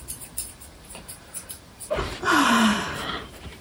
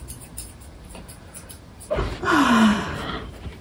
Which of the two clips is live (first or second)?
second